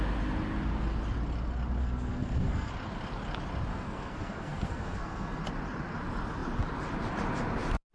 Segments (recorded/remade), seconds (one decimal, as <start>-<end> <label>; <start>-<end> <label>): 0.0-1.8 recorded; 1.8-2.7 remade; 2.7-3.7 recorded; 3.7-5.4 remade; 5.4-7.9 recorded